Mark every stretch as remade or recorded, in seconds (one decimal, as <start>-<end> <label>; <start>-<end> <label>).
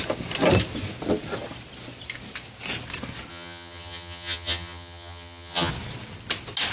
0.0-3.3 recorded; 3.3-5.7 remade; 5.7-6.7 recorded